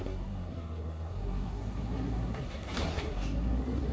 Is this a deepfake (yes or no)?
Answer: yes